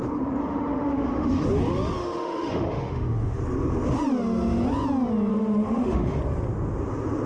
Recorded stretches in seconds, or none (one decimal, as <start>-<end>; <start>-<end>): 0.0-0.4; 1.4-2.0; 3.4-5.3; 6.2-7.3